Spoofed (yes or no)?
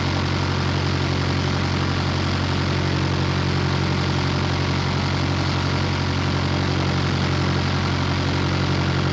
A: no